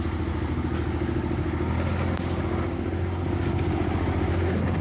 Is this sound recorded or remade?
recorded